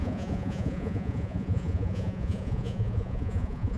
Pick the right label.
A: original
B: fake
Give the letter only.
B